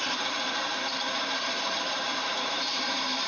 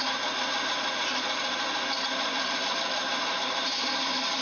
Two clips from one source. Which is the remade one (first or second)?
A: first